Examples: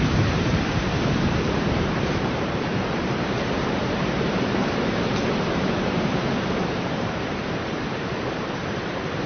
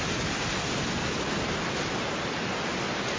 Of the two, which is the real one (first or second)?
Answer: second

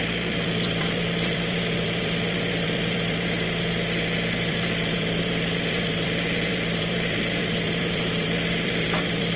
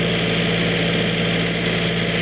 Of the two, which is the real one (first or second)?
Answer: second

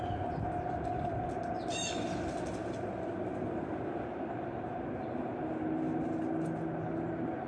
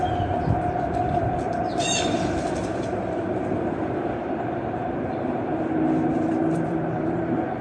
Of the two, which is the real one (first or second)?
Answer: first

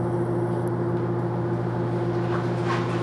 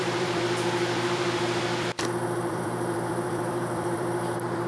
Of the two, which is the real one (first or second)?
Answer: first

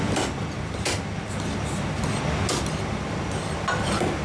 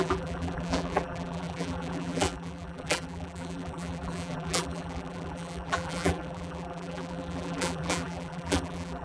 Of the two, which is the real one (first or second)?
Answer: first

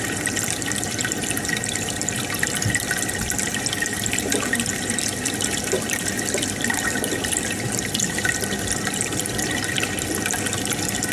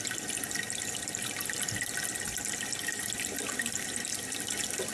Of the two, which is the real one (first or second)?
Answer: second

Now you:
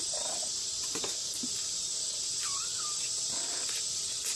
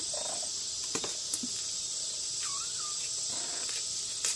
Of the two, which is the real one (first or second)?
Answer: second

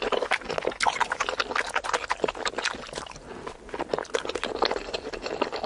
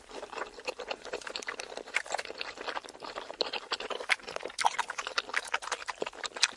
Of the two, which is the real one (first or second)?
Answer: first